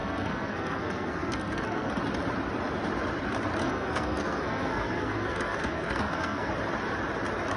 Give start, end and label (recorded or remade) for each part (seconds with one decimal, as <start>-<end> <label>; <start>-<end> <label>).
0.0-1.9 remade; 1.9-3.6 recorded; 3.6-6.5 remade; 6.5-7.6 recorded